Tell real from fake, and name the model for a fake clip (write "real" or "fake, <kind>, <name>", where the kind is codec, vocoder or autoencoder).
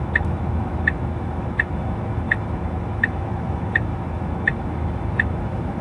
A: fake, autoencoder, DAC-VAE